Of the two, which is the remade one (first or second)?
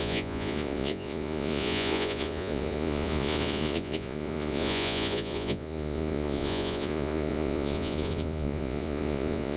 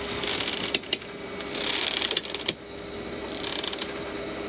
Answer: first